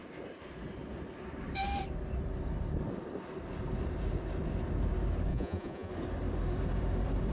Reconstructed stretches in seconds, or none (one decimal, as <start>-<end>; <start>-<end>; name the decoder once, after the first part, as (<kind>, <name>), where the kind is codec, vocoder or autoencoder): 5.3-5.9 (vocoder, Vocos)